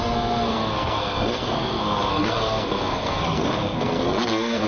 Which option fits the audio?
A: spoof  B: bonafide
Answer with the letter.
A